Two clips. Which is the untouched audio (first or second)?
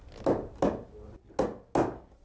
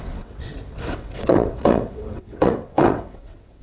first